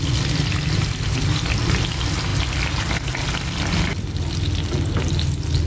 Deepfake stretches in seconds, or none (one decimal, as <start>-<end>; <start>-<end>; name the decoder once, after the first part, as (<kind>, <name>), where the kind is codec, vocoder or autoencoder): none